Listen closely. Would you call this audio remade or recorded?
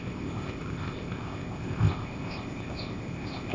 remade